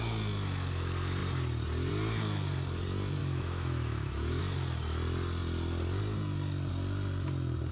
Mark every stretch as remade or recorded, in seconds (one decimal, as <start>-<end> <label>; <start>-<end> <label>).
0.0-3.2 recorded; 3.2-4.4 remade; 4.4-7.7 recorded